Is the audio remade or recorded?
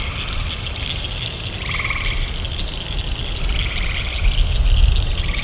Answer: recorded